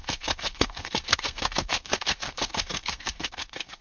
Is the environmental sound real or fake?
fake